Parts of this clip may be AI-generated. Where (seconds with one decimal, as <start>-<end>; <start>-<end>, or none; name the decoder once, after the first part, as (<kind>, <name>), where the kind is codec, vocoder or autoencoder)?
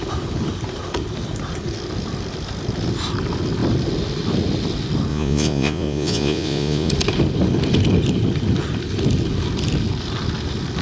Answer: 5.1-6.9 (vocoder, Vocos)